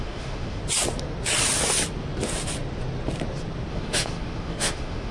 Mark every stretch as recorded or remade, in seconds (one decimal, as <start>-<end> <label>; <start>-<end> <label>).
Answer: 0.0-0.6 remade; 0.6-3.7 recorded; 3.7-5.1 remade